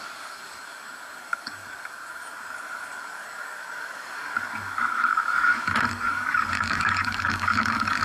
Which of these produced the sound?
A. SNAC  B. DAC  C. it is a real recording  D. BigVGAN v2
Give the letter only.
B